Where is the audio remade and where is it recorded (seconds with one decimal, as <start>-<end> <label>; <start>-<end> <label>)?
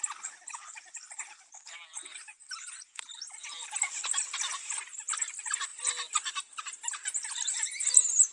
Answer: 0.0-8.3 recorded